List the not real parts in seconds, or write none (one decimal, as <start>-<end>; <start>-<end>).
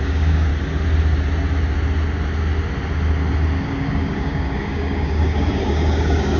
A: 0.0-0.5; 3.6-6.4